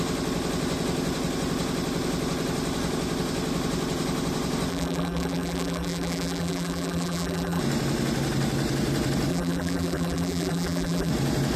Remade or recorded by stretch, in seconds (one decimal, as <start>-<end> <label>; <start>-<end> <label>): 0.0-4.7 recorded; 4.7-7.6 remade; 7.6-9.3 recorded; 9.3-11.1 remade; 11.1-11.6 recorded